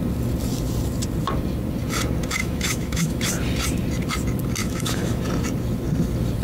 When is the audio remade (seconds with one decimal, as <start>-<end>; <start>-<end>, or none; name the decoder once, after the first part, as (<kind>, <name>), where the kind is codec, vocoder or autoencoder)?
2.4-3.2 (autoencoder, DAC-VAE); 4.6-5.2